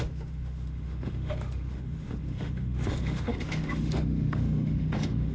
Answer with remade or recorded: remade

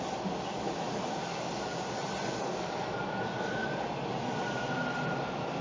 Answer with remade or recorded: recorded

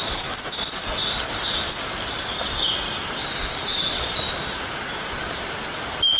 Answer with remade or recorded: recorded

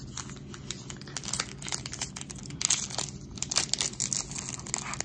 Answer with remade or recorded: recorded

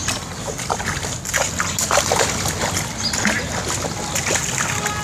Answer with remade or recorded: recorded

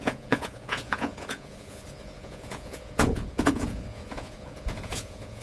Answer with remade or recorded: remade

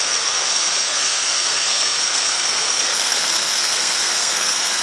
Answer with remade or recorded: remade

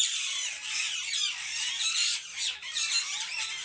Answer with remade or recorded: remade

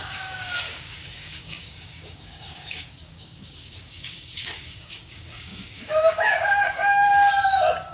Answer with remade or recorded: remade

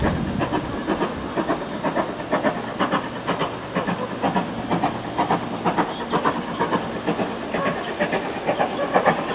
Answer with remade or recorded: recorded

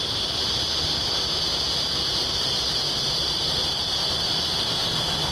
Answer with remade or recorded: recorded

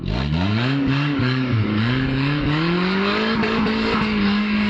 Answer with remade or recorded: remade